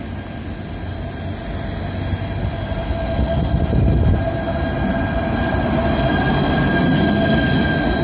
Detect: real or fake real